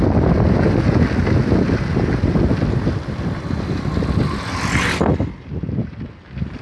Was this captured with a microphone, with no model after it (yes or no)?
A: yes